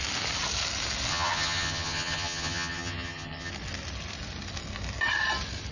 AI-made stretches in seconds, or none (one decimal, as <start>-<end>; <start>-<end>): 1.1-3.5